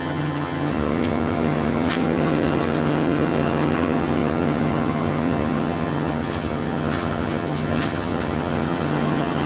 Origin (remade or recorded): remade